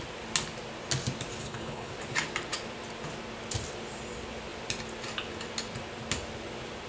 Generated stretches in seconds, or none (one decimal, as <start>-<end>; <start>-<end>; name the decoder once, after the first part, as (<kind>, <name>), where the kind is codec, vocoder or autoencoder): 1.4-1.9 (codec, HILCodec)